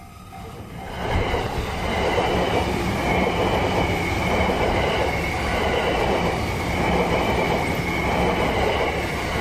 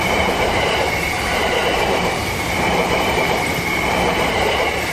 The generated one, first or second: second